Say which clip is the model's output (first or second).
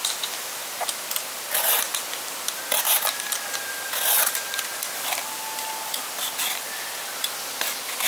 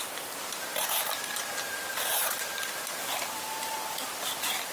second